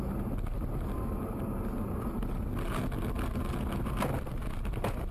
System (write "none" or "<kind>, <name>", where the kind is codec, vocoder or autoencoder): none